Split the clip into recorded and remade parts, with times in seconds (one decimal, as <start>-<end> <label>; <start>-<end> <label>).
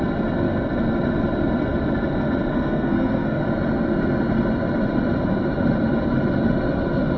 0.0-2.5 recorded; 2.5-3.4 remade; 3.4-7.2 recorded